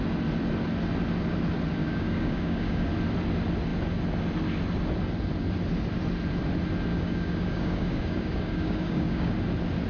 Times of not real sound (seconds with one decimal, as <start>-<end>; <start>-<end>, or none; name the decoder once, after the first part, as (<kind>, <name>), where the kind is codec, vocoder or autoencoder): 1.8-2.9 (codec, DAC); 6.9-9.3